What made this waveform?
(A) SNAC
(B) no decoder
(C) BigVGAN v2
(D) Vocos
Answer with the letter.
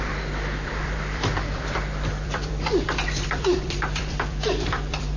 C